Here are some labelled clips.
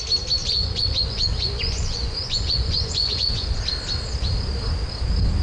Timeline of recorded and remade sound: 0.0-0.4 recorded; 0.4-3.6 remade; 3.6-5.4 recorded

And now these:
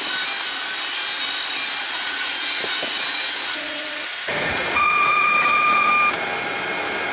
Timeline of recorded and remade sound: 0.0-1.8 recorded; 1.8-5.9 remade; 5.9-7.1 recorded

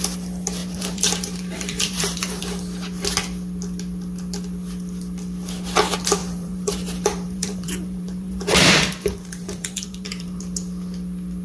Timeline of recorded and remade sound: 0.0-0.6 recorded; 0.6-2.4 remade; 2.4-6.2 recorded; 6.2-10.4 remade; 10.4-11.4 recorded

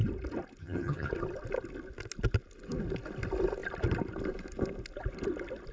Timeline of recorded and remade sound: 0.0-0.6 recorded; 0.6-1.1 remade; 1.1-5.7 recorded

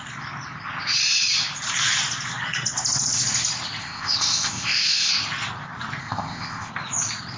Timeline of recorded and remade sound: 0.0-3.8 recorded; 3.8-5.1 remade; 5.1-6.0 recorded; 6.0-6.7 remade; 6.7-7.4 recorded

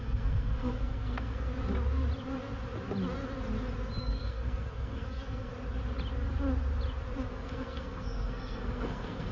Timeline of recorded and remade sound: 0.0-1.5 remade; 1.5-4.0 recorded; 4.0-5.5 remade; 5.5-7.3 recorded; 7.3-9.3 remade